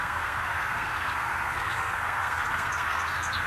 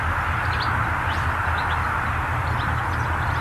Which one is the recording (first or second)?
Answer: second